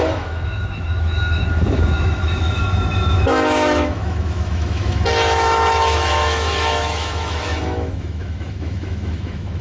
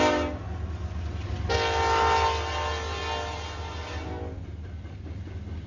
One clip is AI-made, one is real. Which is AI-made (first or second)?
first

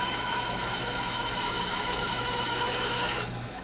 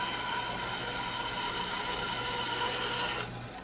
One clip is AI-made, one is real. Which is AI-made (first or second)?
first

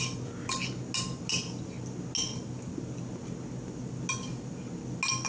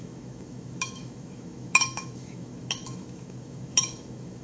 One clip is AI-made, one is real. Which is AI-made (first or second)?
second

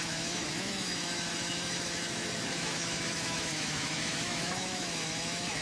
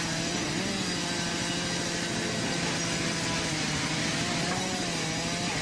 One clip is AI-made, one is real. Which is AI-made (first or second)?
first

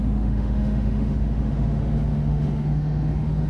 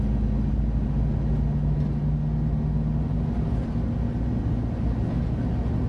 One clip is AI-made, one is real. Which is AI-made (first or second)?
first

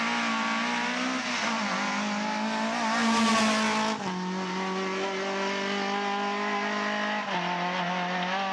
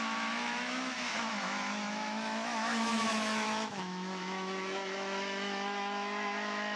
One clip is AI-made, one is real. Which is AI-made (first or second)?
second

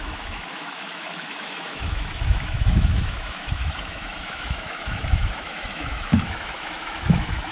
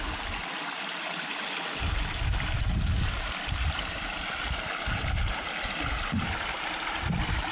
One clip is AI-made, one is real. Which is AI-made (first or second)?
first